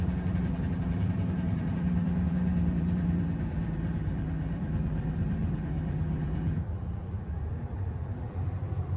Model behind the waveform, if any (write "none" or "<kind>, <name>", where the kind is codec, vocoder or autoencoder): vocoder, BigVGAN v2